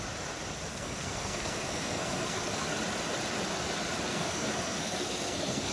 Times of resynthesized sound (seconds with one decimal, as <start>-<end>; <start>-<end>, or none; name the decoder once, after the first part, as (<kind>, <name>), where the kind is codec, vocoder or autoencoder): 0.7-2.7 (codec, SNAC); 4.1-5.7